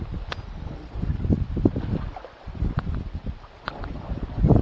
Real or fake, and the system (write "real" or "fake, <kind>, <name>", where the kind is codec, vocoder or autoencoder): real